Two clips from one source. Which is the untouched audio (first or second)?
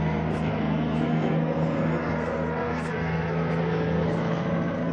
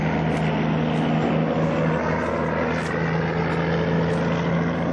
second